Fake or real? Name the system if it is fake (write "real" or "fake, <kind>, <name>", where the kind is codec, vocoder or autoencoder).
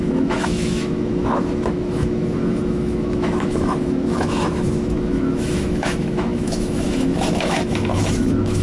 fake, autoencoder, DAC-VAE